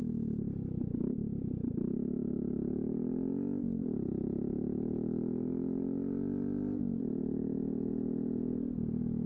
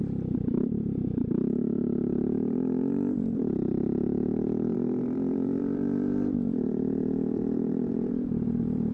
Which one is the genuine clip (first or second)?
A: first